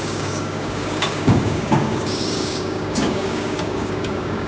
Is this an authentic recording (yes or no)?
no